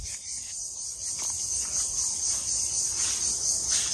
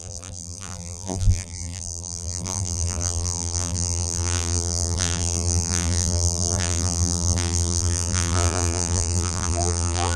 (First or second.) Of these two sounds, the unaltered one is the first